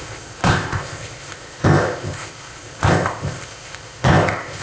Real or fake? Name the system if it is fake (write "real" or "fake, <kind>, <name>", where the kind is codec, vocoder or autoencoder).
fake, codec, ZipCodec